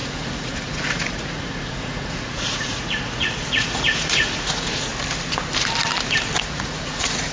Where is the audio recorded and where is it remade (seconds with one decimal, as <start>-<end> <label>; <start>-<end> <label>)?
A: 0.0-4.9 remade; 4.9-6.4 recorded; 6.4-7.3 remade